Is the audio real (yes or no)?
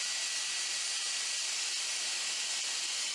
yes